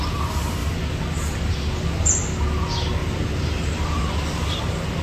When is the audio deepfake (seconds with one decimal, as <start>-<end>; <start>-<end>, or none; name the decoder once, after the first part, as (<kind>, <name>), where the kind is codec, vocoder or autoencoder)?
3.0-4.1 (vocoder, BigVGAN v2)